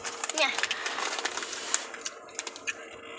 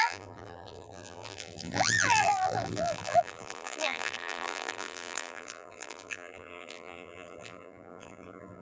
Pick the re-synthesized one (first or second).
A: second